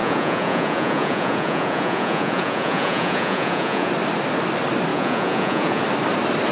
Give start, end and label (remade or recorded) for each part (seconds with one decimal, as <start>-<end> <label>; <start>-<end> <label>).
0.0-3.9 remade; 3.9-4.9 recorded; 4.9-5.8 remade; 5.8-6.5 recorded